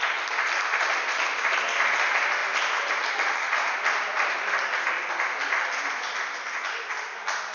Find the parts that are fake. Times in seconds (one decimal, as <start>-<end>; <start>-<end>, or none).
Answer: none